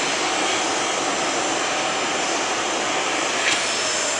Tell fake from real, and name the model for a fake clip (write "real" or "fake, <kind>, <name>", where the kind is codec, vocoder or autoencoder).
real